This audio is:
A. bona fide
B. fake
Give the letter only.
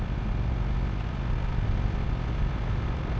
A